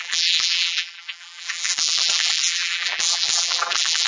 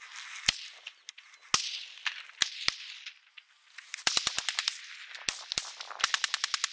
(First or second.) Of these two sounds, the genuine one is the second